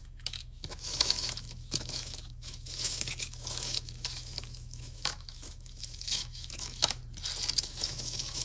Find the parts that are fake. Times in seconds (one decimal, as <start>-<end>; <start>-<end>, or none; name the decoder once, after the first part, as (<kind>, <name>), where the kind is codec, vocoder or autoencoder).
0.0-7.0 (autoencoder, DAC-VAE); 7.6-8.4